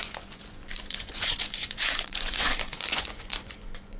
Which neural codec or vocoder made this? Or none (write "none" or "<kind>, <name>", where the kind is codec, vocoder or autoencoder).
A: vocoder, Vocos